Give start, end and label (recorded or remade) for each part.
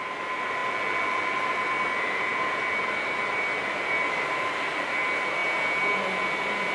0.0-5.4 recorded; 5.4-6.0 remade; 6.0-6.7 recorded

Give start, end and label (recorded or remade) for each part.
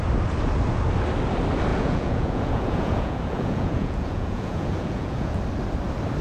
0.0-1.7 recorded; 1.7-5.4 remade; 5.4-6.2 recorded